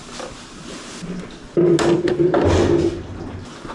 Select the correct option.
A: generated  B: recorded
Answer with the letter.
B